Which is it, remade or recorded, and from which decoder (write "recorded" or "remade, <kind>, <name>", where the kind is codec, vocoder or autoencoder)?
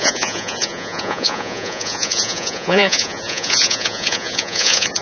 remade, vocoder, Vocos